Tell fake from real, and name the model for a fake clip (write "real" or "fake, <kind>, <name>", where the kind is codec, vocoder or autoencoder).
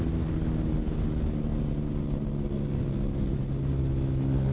real